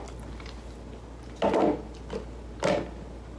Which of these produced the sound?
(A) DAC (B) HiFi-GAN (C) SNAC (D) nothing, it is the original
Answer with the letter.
D